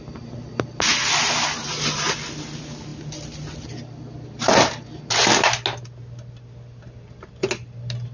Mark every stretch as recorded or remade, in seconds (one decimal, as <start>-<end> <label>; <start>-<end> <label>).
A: 0.0-2.9 recorded; 2.9-5.0 remade; 5.0-8.1 recorded